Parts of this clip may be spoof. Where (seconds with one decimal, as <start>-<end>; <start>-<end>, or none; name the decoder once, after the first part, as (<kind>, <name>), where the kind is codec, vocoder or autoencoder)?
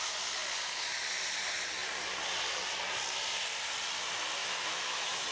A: 4.4-5.3 (autoencoder, DAC-VAE)